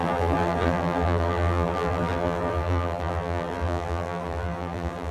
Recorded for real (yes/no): no